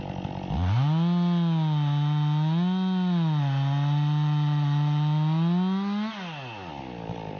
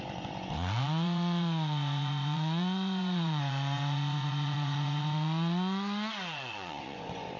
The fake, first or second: second